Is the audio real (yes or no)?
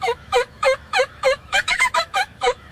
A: no